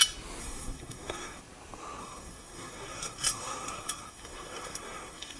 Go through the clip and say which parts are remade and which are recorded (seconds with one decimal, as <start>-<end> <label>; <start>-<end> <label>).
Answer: 0.0-0.4 recorded; 0.4-1.4 remade; 1.4-2.0 recorded; 2.0-5.4 remade